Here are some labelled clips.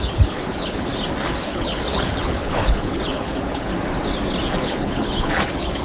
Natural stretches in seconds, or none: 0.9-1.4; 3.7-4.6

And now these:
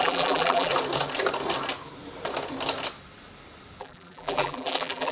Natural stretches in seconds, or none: 0.7-3.8

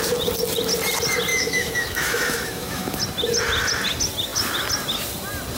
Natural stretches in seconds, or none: 0.0-1.3; 3.0-5.6

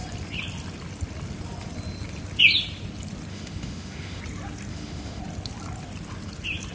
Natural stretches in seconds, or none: 0.0-3.3; 4.2-4.7; 5.2-6.7